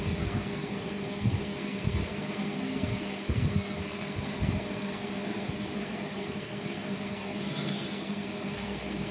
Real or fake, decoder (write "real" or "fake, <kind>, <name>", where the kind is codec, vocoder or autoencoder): fake, codec, SNAC